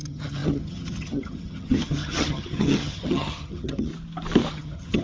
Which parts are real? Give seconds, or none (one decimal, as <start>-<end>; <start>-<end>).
3.9-4.5